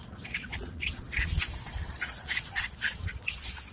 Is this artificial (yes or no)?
yes